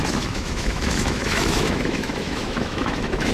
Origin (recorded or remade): remade